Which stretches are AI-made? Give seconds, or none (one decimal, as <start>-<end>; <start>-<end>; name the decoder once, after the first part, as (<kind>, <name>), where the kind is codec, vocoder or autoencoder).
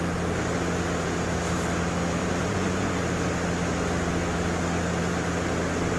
2.2-3.0 (vocoder, Vocos)